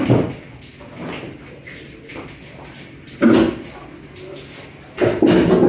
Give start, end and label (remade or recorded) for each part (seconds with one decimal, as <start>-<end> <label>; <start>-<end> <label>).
0.0-5.7 recorded